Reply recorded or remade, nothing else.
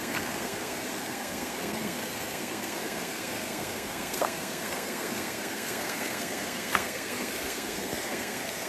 remade